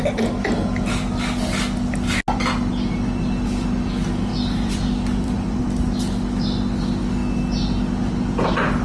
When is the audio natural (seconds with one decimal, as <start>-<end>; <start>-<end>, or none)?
0.0-4.3; 5.6-8.8